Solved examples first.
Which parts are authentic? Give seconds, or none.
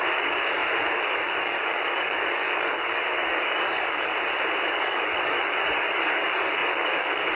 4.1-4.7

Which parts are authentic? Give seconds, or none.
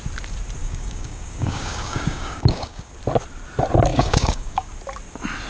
0.0-0.6; 2.9-3.9; 4.7-5.5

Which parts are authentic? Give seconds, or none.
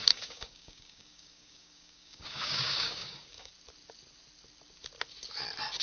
3.5-5.8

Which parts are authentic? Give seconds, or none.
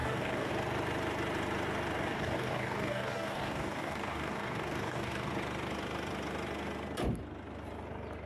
0.5-2.0; 5.3-8.3